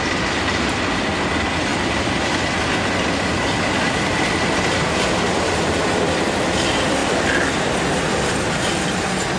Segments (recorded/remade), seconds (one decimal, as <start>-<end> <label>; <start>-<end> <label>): 0.0-9.4 recorded

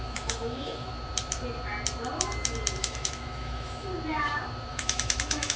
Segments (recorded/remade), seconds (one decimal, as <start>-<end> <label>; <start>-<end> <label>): 0.0-0.9 remade; 0.9-2.8 recorded; 2.8-3.9 remade; 3.9-4.7 recorded; 4.7-5.6 remade

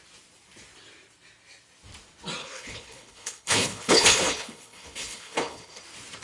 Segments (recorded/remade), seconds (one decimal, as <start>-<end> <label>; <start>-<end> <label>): 0.0-2.4 recorded; 2.4-5.8 remade; 5.8-6.2 recorded